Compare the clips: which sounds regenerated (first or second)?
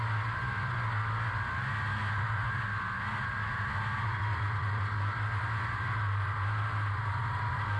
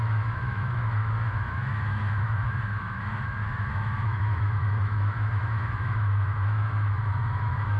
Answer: second